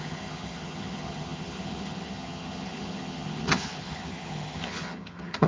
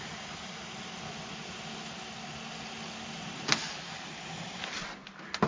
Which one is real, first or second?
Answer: second